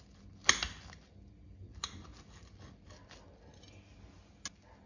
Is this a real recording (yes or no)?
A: yes